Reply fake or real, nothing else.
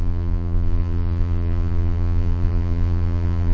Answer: fake